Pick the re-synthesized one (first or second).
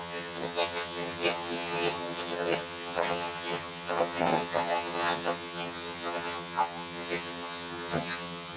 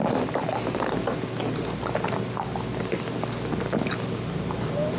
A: first